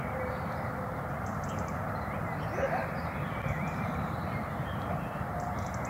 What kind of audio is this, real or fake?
fake